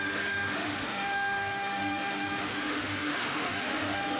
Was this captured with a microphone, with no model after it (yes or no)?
no